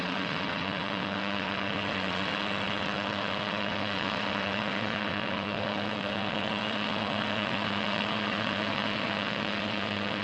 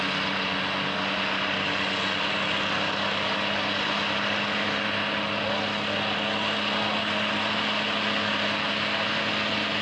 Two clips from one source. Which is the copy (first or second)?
first